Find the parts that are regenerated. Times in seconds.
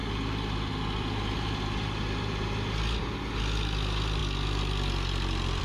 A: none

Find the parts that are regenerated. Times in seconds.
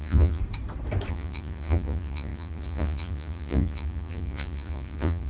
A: 0.0-0.4 (vocoder, Vocos); 1.1-5.3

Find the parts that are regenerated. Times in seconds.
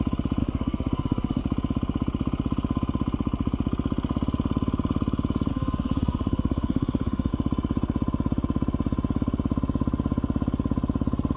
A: 0.4-1.4 (codec, SNAC); 5.5-7.3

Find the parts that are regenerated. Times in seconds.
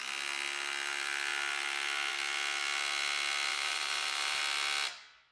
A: 3.5-4.4 (vocoder, BigVGAN v2)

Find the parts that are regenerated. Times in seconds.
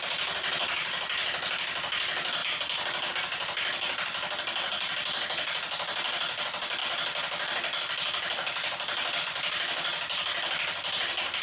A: none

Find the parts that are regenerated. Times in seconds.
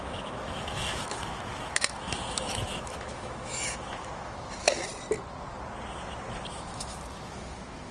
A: 0.0-4.9 (autoencoder, DAC-VAE); 6.5-7.9